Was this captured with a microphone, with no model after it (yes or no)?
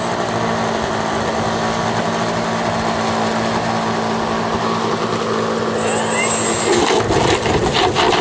yes